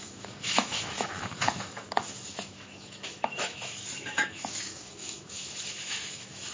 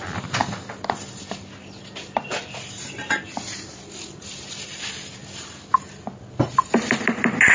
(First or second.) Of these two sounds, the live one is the second